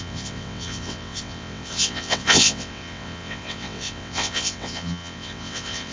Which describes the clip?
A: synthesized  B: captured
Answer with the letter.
A